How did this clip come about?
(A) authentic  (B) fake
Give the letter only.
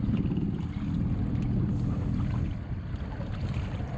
A